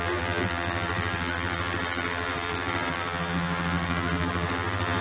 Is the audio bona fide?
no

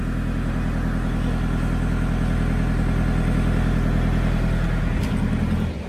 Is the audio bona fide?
yes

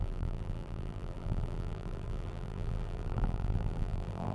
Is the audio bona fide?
no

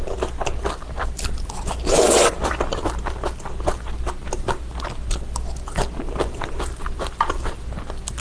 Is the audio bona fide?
yes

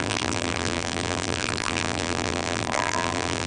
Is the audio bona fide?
no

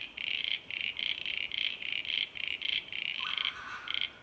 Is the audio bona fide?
yes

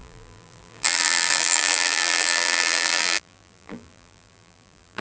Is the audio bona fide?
no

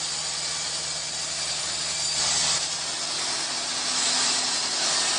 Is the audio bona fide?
yes